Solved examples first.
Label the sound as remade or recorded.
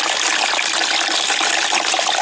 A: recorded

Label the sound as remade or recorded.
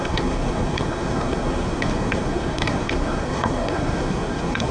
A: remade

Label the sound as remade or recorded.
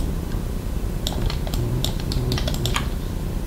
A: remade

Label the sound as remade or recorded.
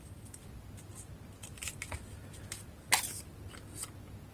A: recorded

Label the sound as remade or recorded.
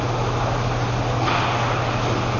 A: recorded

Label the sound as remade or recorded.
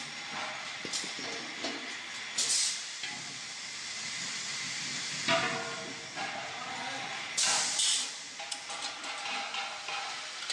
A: recorded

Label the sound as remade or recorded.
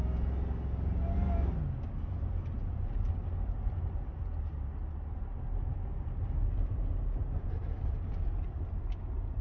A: recorded